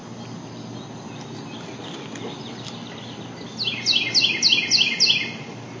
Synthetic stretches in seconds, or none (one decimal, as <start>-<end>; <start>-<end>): none